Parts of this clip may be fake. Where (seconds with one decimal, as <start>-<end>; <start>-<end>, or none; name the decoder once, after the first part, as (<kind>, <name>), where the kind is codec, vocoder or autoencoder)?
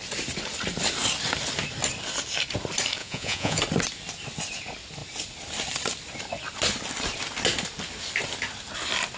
3.0-3.6 (vocoder, Vocos)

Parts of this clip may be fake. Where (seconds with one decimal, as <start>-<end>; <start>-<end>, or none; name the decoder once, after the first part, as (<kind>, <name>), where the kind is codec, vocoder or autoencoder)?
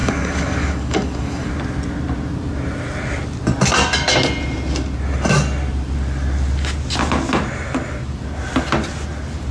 0.0-1.5 (codec, DAC)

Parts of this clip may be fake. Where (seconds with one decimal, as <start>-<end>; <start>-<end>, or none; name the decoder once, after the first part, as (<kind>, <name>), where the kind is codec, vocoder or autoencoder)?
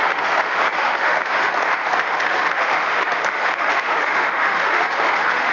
0.0-5.5 (autoencoder, DAC-VAE)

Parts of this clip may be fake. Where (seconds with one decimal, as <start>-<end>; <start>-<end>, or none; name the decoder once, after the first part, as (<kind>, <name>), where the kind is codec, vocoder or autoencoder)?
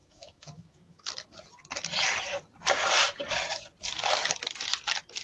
0.0-1.1 (autoencoder, DAC-VAE)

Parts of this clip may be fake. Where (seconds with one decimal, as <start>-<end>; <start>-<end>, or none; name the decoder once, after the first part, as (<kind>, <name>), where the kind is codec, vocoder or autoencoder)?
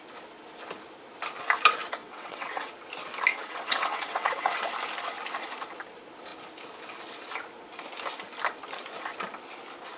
2.0-2.7 (vocoder, WaveNeXt); 3.3-4.7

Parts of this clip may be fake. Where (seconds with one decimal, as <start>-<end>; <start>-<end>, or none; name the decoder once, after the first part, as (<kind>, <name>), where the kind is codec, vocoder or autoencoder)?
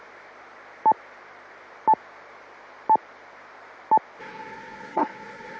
4.2-5.6 (codec, SNAC)